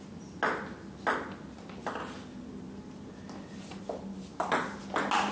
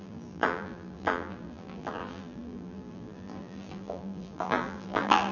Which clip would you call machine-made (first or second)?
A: second